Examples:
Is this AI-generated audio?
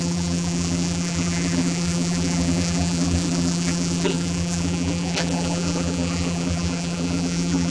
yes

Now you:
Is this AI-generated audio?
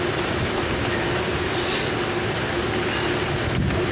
no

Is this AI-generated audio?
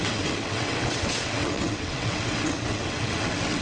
yes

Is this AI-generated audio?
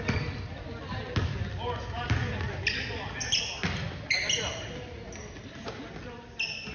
no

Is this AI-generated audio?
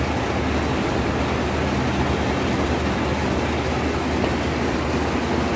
yes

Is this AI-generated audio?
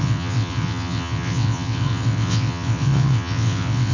yes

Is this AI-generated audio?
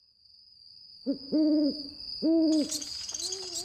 no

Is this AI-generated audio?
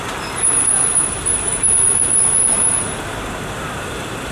yes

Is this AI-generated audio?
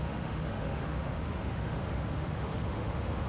yes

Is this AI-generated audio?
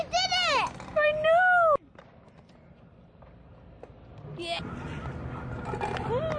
no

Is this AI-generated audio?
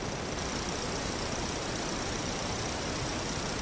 no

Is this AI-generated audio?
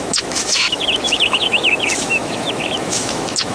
yes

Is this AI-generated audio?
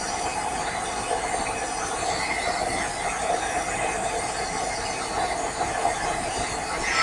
no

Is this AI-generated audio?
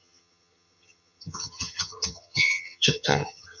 yes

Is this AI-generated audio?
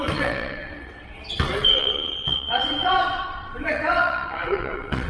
yes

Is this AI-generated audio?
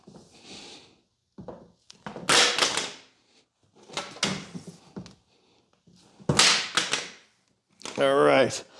no